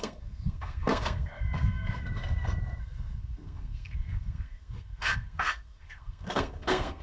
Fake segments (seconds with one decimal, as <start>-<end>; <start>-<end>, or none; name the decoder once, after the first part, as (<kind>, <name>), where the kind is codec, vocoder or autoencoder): 0.0-7.0 (codec, SNAC)